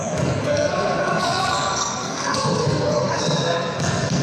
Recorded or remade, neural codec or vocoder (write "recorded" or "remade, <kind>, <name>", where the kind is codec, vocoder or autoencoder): remade, codec, SNAC